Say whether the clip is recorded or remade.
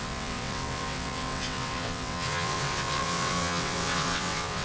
remade